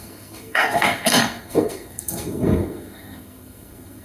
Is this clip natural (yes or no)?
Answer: no